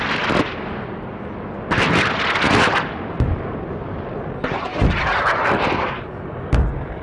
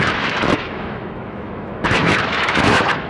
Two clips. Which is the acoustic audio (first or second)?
first